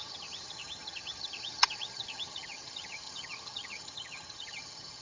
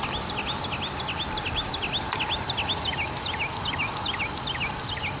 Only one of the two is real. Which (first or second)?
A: second